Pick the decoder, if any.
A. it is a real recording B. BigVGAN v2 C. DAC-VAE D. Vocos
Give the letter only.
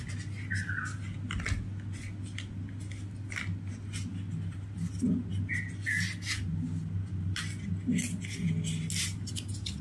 A